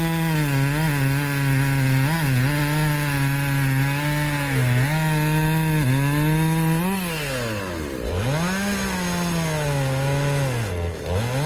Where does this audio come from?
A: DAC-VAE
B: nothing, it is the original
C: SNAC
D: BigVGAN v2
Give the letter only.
B